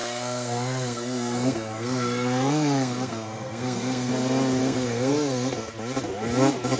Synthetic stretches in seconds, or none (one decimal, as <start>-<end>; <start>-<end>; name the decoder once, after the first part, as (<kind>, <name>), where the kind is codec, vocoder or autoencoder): 0.0-4.1 (codec, SNAC); 4.6-5.7